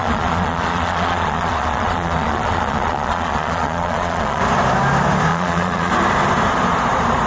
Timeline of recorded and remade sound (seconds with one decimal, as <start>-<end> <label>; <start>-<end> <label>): 0.0-4.4 remade; 4.4-5.3 recorded; 5.3-5.9 remade; 5.9-7.3 recorded